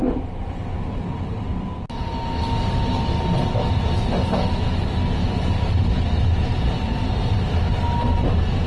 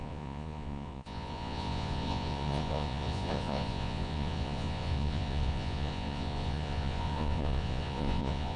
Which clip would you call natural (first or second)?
first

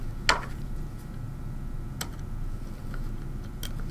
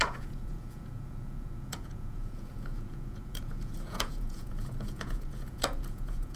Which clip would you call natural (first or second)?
first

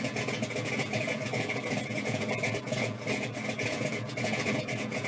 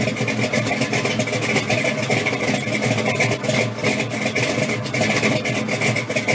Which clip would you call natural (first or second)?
second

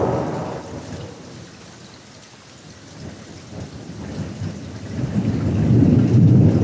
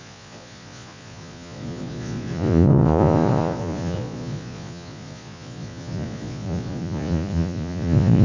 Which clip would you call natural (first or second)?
first